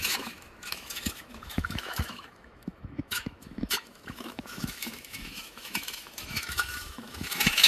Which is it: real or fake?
fake